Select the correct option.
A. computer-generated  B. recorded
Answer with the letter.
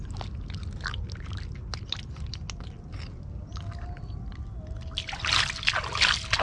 B